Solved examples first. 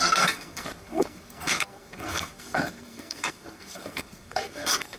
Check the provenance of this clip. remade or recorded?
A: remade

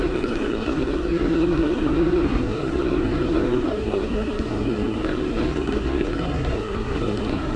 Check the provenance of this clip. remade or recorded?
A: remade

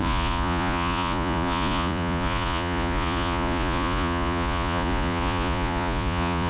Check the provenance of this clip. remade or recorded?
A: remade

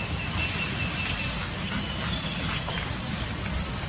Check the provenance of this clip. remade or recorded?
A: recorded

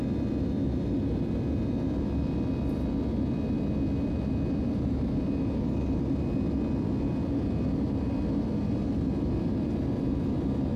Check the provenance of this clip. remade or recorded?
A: recorded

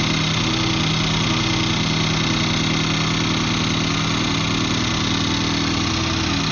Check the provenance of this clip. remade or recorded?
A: recorded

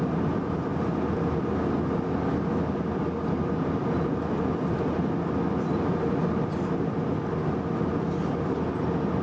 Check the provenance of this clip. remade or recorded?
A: recorded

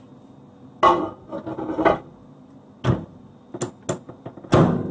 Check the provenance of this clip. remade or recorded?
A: recorded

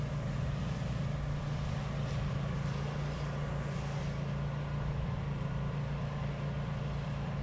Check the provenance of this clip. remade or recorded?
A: recorded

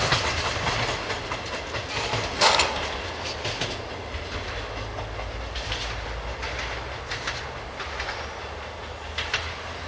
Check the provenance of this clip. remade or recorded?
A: recorded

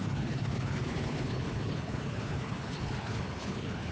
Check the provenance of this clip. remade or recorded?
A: remade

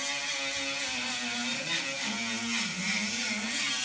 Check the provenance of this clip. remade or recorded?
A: recorded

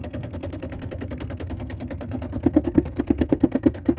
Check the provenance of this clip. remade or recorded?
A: remade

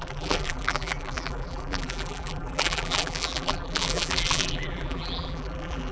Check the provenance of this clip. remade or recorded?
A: remade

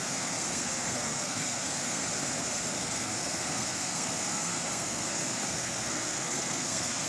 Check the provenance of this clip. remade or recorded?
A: remade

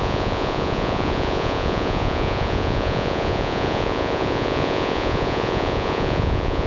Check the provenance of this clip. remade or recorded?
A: remade